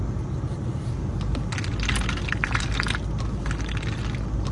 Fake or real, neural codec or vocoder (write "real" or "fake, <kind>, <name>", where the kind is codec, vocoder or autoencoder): real